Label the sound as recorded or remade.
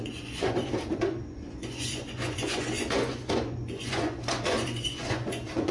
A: remade